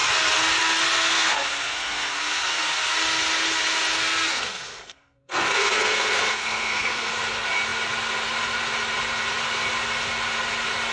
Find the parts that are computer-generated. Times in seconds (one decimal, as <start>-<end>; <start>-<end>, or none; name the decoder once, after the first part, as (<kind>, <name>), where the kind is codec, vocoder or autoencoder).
1.0-2.8 (codec, SNAC); 4.3-7.1